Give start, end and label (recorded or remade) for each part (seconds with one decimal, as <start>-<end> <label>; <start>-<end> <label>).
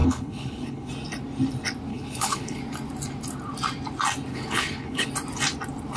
0.0-0.9 remade; 0.9-1.9 recorded; 1.9-2.6 remade; 2.6-4.3 recorded; 4.3-5.1 remade; 5.1-6.0 recorded